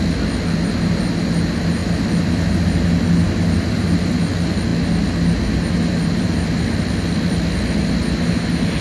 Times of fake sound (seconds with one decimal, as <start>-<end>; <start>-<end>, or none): none